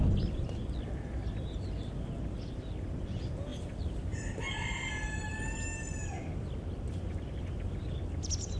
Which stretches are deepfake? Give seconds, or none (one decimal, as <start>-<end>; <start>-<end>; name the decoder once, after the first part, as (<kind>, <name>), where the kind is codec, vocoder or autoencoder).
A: none